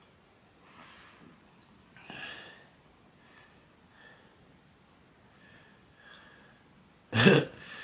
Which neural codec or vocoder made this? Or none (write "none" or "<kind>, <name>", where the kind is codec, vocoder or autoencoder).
none